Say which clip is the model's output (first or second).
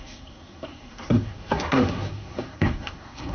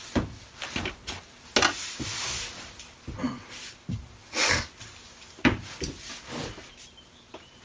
first